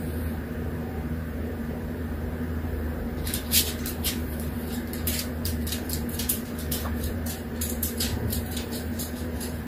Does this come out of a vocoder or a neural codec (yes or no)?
yes